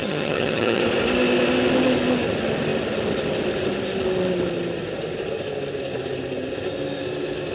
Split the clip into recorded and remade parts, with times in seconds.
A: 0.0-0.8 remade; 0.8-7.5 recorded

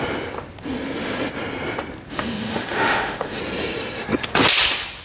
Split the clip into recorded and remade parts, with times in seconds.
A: 0.0-2.1 recorded; 2.1-3.4 remade; 3.4-5.0 recorded

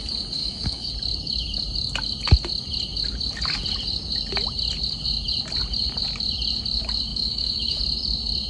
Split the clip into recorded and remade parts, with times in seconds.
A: 0.0-0.4 recorded; 0.4-0.9 remade; 0.9-7.1 recorded; 7.1-7.8 remade; 7.8-8.5 recorded

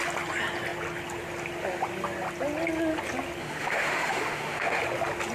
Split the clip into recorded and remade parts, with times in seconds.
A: 0.0-3.4 recorded; 3.4-4.8 remade; 4.8-5.3 recorded